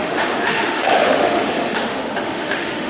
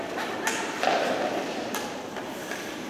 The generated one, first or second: first